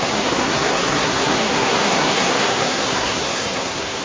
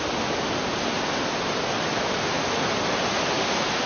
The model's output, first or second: first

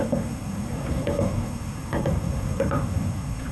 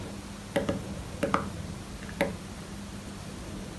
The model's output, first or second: first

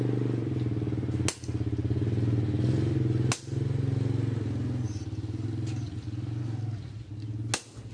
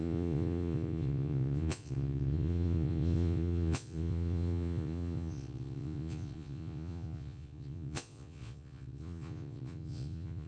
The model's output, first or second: second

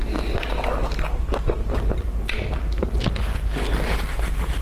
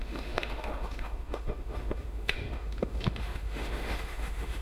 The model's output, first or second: second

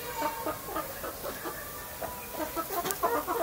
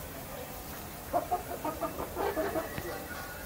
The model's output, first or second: second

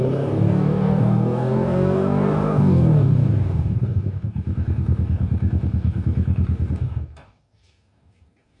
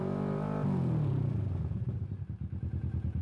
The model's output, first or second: first